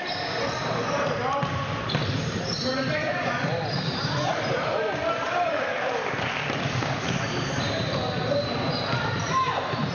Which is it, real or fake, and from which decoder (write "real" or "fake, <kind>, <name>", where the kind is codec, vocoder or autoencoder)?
fake, vocoder, BigVGAN v2